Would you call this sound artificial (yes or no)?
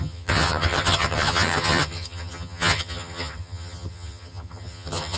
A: yes